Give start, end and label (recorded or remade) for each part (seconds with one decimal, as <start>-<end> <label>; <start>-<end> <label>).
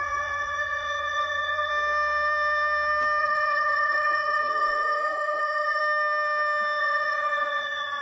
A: 0.0-1.7 remade; 1.7-3.2 recorded; 3.2-5.8 remade; 5.8-6.8 recorded; 6.8-8.0 remade